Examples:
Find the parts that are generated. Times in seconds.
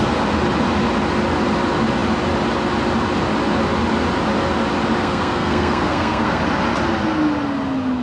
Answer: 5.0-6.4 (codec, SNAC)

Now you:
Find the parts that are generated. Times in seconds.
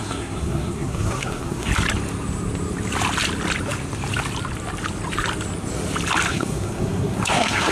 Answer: 0.0-1.7 (codec, SNAC); 6.3-7.7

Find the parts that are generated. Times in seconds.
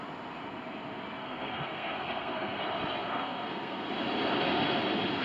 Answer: 1.2-2.6 (codec, SNAC); 3.0-3.9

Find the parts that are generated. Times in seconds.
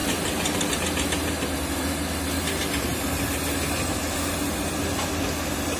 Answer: none